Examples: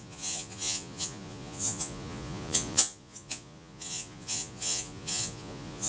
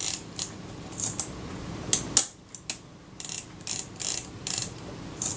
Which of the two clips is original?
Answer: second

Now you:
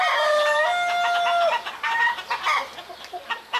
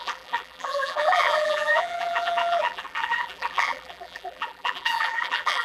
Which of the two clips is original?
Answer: first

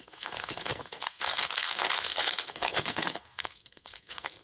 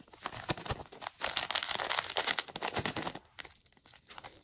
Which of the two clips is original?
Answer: second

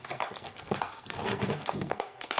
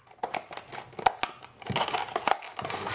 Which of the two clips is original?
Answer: second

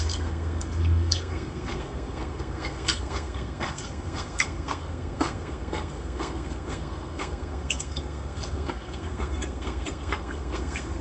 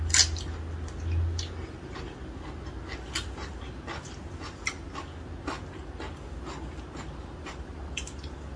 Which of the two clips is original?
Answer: second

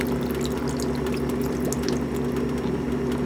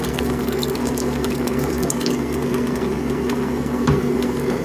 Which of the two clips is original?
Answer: first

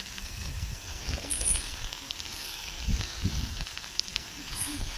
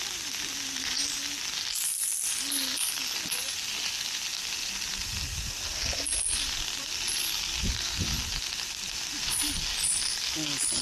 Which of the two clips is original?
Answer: second